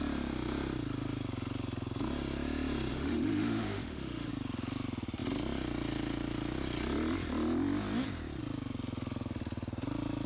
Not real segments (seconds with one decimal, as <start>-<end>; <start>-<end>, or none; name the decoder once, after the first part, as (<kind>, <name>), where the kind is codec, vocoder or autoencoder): 2.9-4.3 (autoencoder, DAC-VAE)